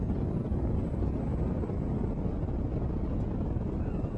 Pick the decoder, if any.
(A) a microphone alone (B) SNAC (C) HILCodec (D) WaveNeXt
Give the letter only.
A